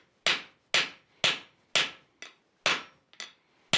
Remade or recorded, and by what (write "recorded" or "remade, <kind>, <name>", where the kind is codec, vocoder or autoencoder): recorded